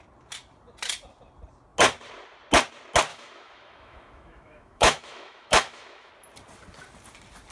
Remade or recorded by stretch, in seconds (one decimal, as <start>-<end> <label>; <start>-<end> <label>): 0.0-3.1 recorded; 3.1-6.1 remade; 6.1-7.5 recorded